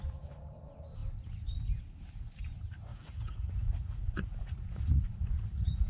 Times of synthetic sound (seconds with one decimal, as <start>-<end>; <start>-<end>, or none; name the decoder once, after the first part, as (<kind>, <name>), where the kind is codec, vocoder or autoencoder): 2.9-5.9 (vocoder, Vocos)